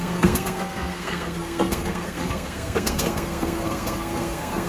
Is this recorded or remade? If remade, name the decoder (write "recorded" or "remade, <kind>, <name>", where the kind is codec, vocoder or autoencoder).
remade, codec, SNAC